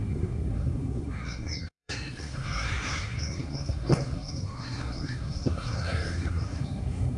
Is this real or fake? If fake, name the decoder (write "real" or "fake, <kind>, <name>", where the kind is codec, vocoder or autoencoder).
fake, codec, SNAC